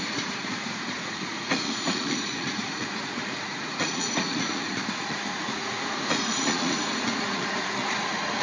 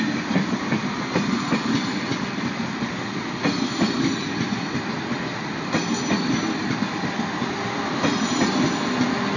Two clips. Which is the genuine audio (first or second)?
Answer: second